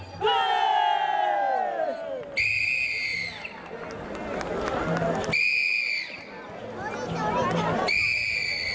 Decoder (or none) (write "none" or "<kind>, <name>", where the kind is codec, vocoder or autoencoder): none